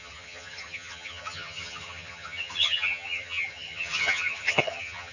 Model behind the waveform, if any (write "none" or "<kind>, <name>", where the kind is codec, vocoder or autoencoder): vocoder, HiFi-GAN